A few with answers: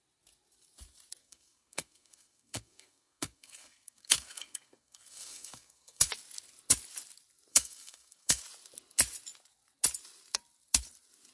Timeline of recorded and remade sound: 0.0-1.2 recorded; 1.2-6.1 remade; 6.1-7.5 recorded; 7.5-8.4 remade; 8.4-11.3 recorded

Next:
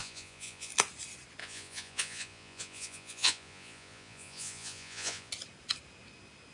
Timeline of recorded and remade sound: 0.0-0.7 remade; 0.7-1.4 recorded; 1.4-5.3 remade; 5.3-6.5 recorded

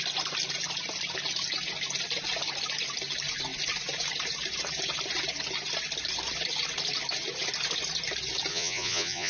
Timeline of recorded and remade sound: 0.0-8.5 recorded; 8.5-9.3 remade

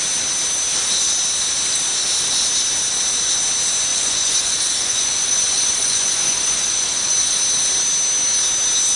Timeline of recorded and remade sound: 0.0-3.9 recorded; 3.9-7.4 remade; 7.4-8.9 recorded

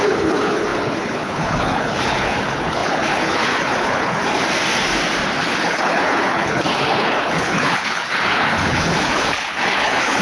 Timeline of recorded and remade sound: 0.0-4.2 remade; 4.2-5.4 recorded; 5.4-10.2 remade